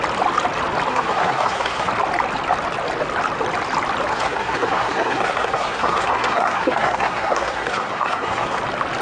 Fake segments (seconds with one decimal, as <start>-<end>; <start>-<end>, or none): 0.9-1.9; 4.1-8.6